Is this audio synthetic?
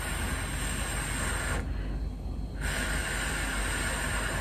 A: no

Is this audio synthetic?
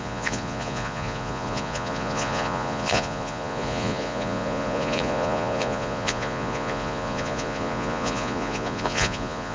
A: yes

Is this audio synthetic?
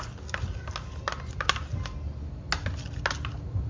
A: no